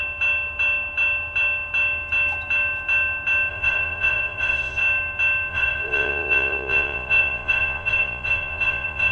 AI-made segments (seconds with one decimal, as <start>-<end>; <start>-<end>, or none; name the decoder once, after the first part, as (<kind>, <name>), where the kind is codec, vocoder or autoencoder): 3.5-4.8 (vocoder, Vocos); 5.5-9.1